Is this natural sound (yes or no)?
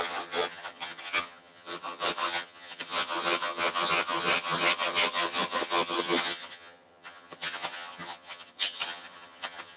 no